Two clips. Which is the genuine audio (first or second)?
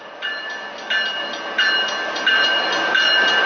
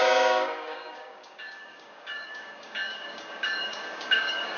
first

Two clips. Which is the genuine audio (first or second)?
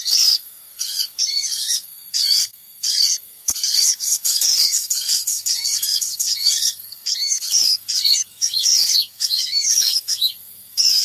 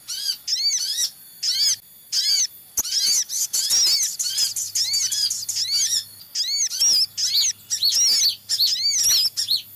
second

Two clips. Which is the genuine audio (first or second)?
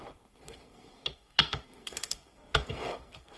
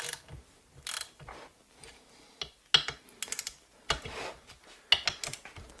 second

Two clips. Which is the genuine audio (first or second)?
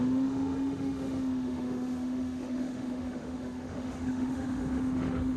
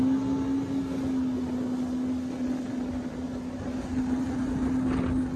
second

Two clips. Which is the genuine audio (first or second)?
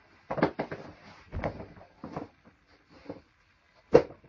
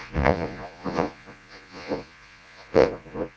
first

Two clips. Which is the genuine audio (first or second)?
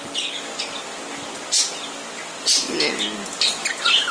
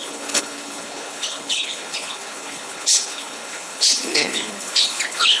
first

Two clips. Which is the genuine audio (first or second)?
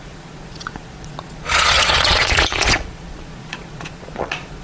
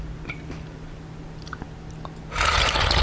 second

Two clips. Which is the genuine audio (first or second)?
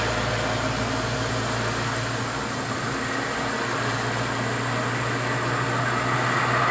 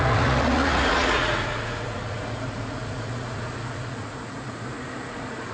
first